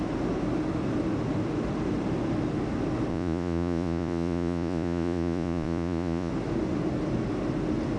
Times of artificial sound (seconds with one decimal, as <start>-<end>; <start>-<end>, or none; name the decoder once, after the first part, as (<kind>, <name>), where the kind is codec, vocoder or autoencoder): 3.1-6.3 (vocoder, Vocos)